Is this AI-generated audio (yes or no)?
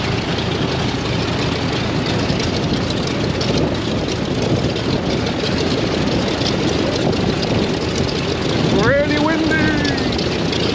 no